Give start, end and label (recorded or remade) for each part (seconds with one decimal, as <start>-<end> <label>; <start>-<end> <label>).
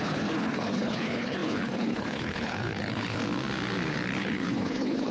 0.0-3.2 remade; 3.2-4.2 recorded; 4.2-5.1 remade